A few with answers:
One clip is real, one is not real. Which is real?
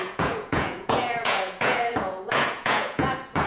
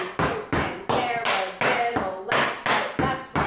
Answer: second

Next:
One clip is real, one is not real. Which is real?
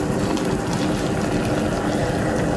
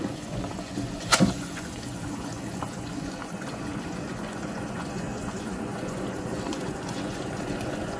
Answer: first